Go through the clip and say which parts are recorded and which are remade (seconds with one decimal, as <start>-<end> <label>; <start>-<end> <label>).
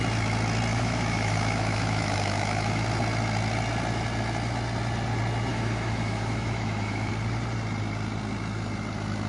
0.0-0.7 recorded; 0.7-2.8 remade; 2.8-5.5 recorded; 5.5-7.1 remade; 7.1-9.3 recorded